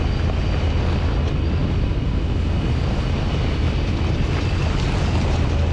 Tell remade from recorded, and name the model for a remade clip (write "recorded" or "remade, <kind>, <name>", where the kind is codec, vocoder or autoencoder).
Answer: recorded